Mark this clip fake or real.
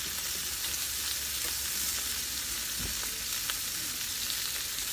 real